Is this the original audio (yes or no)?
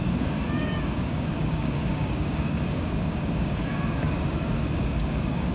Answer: no